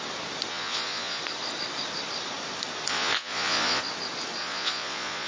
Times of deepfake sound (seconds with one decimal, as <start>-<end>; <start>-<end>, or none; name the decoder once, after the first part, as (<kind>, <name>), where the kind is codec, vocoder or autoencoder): 0.5-1.2 (vocoder, Vocos); 2.9-3.8; 4.4-5.3